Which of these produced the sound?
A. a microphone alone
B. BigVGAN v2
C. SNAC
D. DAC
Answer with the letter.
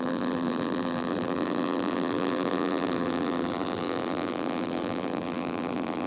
B